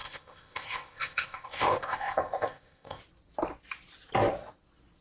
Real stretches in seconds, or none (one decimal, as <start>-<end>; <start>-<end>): 3.0-5.0